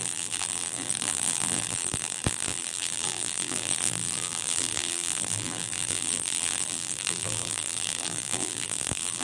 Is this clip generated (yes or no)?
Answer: yes